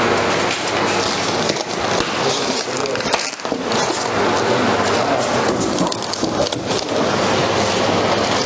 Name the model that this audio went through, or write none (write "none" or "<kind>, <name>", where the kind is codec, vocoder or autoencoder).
none